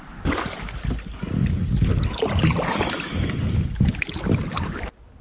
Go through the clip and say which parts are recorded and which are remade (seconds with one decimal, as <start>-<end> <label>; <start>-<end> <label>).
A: 0.0-5.2 recorded